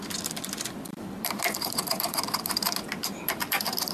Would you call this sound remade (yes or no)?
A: yes